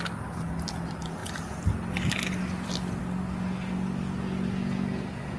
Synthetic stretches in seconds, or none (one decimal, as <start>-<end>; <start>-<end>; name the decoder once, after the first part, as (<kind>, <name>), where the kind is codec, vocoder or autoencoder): none